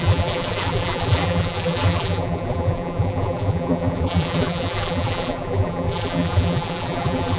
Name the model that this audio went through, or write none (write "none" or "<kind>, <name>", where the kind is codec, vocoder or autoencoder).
vocoder, BigVGAN v2